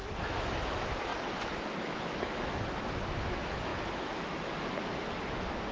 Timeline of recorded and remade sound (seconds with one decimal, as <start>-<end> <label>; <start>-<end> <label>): 0.0-5.7 remade

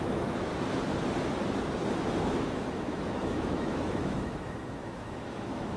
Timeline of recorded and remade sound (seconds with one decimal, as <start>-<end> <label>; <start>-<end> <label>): 0.0-0.5 remade; 0.5-2.2 recorded; 2.2-5.8 remade

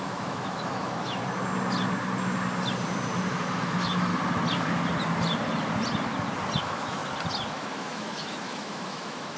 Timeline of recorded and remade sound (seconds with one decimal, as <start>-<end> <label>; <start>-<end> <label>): 0.0-1.2 remade; 1.2-3.3 recorded; 3.3-4.1 remade; 4.1-6.6 recorded; 6.6-7.0 remade; 7.0-7.5 recorded; 7.5-9.4 remade

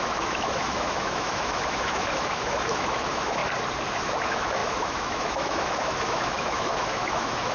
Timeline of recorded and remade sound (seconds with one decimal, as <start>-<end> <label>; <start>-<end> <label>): 0.0-3.4 remade; 3.4-3.9 recorded; 3.9-7.5 remade

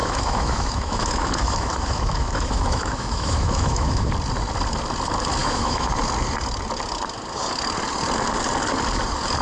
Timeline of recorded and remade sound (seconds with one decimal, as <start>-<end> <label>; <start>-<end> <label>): 0.0-4.1 remade; 4.1-5.4 recorded; 5.4-5.9 remade; 5.9-9.4 recorded

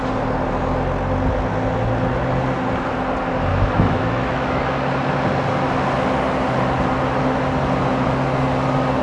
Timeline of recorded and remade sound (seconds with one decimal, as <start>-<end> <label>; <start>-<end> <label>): 0.0-3.5 recorded; 3.5-4.6 remade; 4.6-9.0 recorded

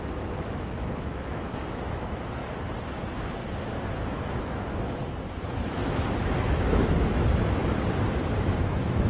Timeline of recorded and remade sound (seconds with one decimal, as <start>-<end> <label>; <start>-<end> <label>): 0.0-2.4 remade; 2.4-3.8 recorded; 3.8-5.0 remade; 5.0-5.5 recorded; 5.5-7.6 remade; 7.6-8.4 recorded; 8.4-9.1 remade